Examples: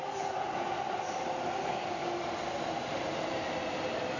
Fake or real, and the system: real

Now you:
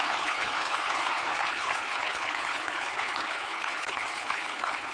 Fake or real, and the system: fake, codec, HILCodec